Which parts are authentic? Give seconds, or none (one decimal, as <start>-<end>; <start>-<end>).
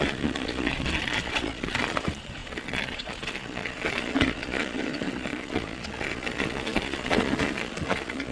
none